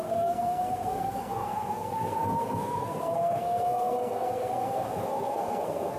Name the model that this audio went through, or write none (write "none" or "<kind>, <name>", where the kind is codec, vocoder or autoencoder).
codec, SNAC